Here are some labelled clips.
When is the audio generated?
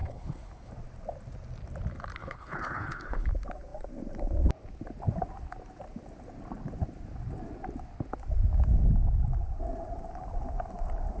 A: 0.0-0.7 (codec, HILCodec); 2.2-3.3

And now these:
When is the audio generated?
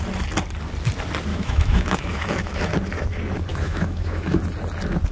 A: 1.3-2.7 (autoencoder, DAC-VAE); 3.5-4.4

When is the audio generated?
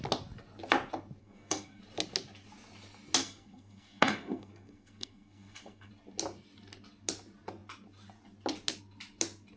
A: 1.2-1.8 (codec, SNAC); 3.2-5.9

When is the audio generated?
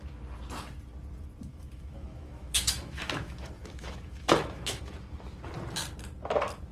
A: 1.5-4.8 (autoencoder, DAC-VAE)